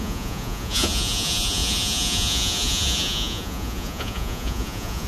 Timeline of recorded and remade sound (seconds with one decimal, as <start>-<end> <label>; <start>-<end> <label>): 0.0-5.1 remade